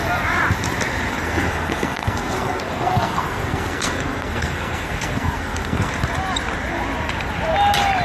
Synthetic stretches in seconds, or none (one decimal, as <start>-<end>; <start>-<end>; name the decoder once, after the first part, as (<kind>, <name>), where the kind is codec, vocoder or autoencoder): 1.1-5.9 (codec, SNAC)